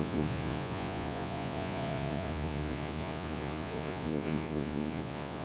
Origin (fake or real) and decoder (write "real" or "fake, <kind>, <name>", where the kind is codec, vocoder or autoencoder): fake, vocoder, Vocos